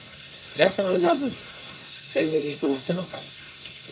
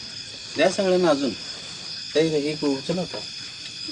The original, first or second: second